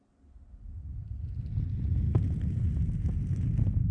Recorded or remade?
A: recorded